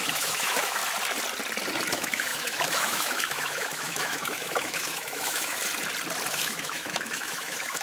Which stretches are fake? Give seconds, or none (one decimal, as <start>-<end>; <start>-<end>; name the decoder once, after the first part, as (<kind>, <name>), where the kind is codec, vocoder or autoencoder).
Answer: 0.0-0.8 (autoencoder, DAC-VAE); 1.9-5.6; 6.3-7.8